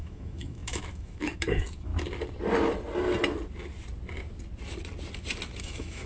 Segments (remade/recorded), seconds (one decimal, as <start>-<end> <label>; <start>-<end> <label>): 0.0-1.9 remade; 1.9-5.6 recorded; 5.6-6.1 remade